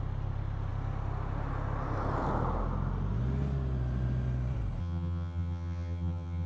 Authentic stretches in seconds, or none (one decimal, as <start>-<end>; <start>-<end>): 0.0-4.8